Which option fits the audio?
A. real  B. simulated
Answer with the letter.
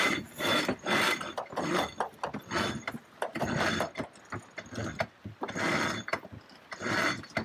A